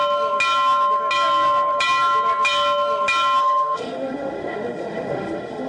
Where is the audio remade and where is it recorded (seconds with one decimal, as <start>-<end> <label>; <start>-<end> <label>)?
0.0-3.4 recorded; 3.4-5.7 remade